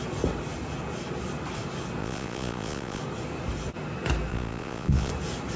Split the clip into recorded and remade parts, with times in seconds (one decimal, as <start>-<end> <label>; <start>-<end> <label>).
0.0-2.0 recorded; 2.0-3.0 remade; 3.0-4.3 recorded; 4.3-5.1 remade; 5.1-5.6 recorded